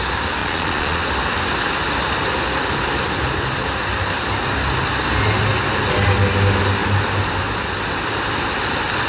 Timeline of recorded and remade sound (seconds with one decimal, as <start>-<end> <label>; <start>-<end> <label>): 0.0-0.4 recorded; 0.4-1.0 remade; 1.0-9.1 recorded